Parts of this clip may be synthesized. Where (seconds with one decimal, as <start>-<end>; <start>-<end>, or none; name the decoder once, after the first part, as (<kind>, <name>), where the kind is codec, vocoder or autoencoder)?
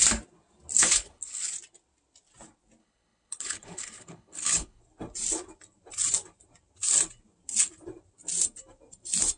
0.8-1.4 (codec, HILCodec); 2.8-4.8